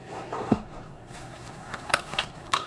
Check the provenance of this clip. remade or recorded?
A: remade